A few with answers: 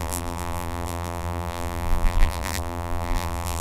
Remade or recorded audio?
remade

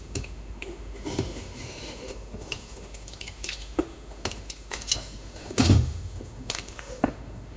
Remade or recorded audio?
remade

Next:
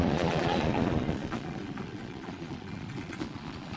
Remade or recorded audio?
remade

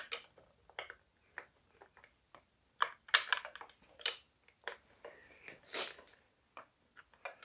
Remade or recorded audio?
recorded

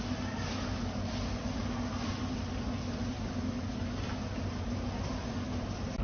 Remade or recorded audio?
recorded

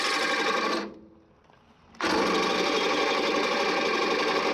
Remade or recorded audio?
recorded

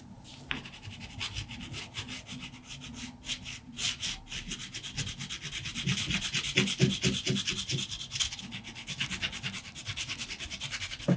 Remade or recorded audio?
recorded